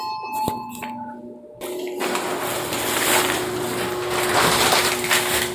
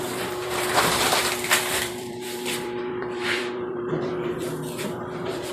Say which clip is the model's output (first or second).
second